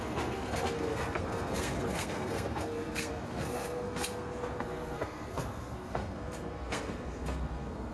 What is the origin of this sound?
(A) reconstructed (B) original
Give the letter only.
A